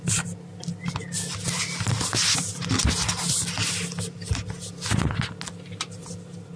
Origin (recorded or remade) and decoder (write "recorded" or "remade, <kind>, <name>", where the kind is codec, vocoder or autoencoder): recorded